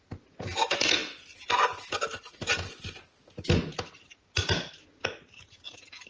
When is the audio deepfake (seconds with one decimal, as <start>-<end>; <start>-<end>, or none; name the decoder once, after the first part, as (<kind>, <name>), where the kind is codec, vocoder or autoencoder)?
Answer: none